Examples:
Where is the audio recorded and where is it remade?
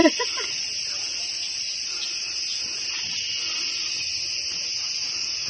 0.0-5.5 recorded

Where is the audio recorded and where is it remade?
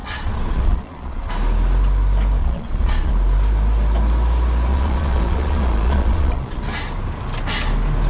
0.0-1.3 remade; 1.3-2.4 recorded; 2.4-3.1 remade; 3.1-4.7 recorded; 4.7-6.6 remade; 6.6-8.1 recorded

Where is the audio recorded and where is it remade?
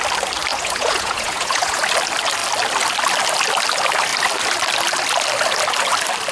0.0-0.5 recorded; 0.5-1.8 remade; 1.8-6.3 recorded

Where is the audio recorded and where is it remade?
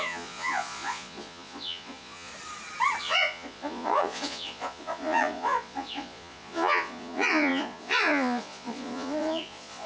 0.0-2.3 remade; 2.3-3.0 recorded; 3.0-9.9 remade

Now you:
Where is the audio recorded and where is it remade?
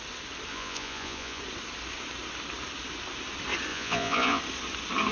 0.0-0.5 recorded; 0.5-1.4 remade; 1.4-3.7 recorded; 3.7-4.4 remade; 4.4-5.1 recorded